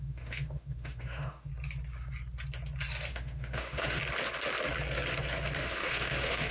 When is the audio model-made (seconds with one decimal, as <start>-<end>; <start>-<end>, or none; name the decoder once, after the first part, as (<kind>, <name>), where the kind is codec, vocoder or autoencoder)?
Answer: 0.0-1.5 (autoencoder, DAC-VAE); 3.1-4.0; 5.6-6.5